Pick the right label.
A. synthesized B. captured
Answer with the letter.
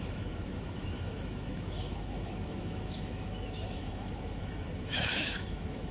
A